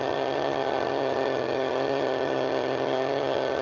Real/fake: fake